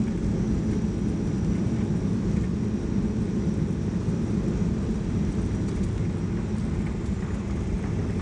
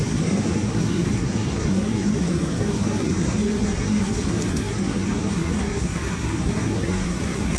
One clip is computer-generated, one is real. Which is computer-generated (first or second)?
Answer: second